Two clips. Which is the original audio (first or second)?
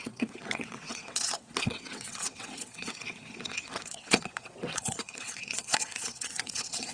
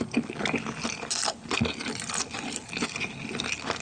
second